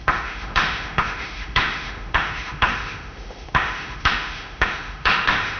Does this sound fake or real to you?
fake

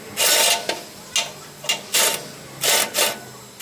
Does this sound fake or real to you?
real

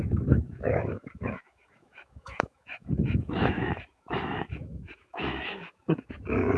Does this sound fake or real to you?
fake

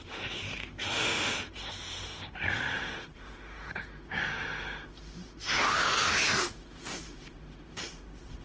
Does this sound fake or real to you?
fake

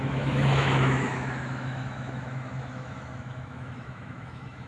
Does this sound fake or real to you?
fake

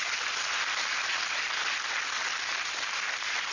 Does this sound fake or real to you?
real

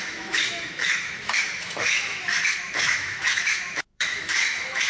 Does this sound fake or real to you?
fake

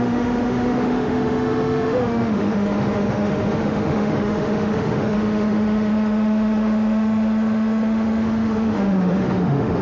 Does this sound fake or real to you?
fake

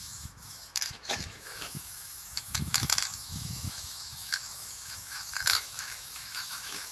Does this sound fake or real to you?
fake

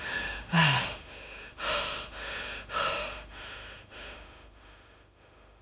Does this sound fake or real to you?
fake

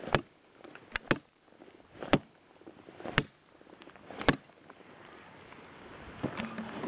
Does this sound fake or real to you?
real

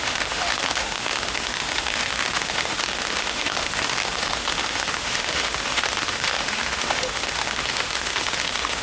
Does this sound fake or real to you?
fake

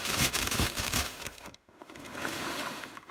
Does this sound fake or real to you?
fake